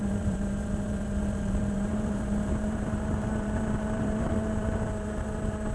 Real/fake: fake